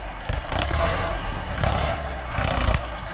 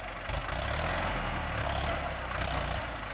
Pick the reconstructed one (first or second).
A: first